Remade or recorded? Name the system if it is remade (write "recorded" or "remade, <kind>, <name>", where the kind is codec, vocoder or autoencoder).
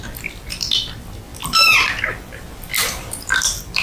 remade, vocoder, BigVGAN v2